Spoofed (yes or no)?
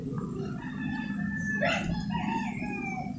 no